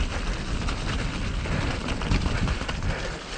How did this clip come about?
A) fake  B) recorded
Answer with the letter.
B